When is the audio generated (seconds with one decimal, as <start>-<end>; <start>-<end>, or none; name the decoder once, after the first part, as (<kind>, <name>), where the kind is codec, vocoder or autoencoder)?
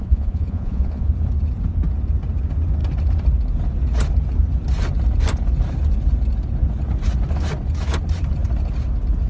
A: 0.0-1.1 (vocoder, Vocos)